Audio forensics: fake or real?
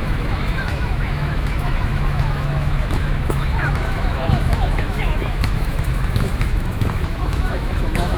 fake